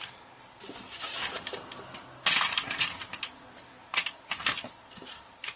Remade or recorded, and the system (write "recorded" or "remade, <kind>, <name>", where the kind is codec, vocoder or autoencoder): recorded